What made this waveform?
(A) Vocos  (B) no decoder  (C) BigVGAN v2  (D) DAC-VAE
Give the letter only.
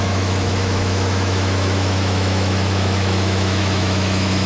D